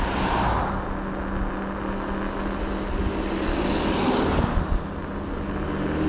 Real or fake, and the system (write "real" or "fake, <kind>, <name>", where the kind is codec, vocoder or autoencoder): real